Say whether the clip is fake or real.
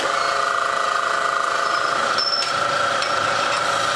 real